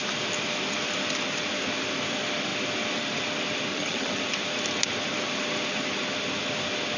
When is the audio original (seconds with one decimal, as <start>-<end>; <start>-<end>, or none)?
0.0-3.7; 4.2-7.0

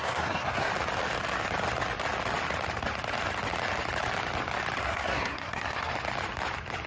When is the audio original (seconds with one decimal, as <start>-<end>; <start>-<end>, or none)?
0.7-4.8; 5.9-6.9